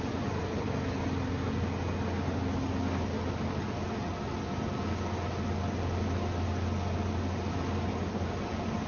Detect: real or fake real